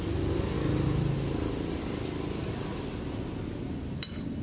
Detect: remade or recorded recorded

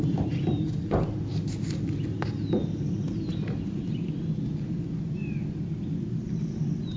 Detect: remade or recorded recorded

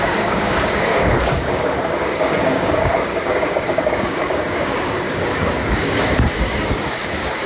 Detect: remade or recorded remade